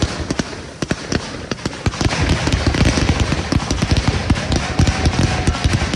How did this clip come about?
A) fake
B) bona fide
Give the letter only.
B